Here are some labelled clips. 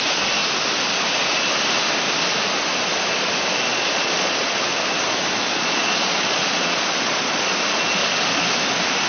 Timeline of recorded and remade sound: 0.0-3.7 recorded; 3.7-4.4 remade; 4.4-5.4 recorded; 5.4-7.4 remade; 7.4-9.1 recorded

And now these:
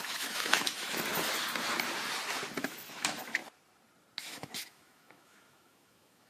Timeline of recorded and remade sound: 0.0-1.1 remade; 1.1-2.6 recorded; 2.6-3.4 remade; 3.4-4.2 recorded; 4.2-6.3 remade

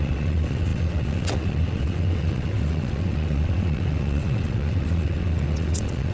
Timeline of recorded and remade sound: 0.0-6.1 remade

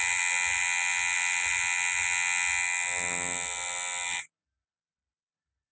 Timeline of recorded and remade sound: 0.0-5.7 recorded

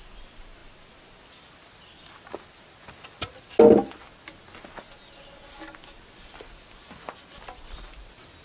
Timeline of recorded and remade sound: 0.0-8.4 recorded

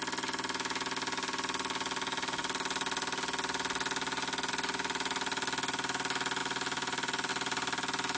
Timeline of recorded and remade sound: 0.0-6.4 recorded; 6.4-7.3 remade; 7.3-8.2 recorded